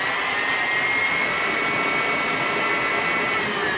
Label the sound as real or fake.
real